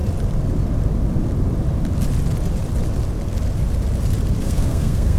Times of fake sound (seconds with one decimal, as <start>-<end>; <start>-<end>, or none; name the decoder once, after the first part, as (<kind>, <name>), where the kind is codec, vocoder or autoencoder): 4.4-5.2 (codec, SNAC)